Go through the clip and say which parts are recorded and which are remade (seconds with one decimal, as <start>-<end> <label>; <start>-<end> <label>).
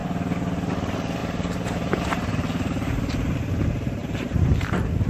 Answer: 0.0-1.2 recorded; 1.2-3.4 remade; 3.4-4.0 recorded; 4.0-4.6 remade; 4.6-5.1 recorded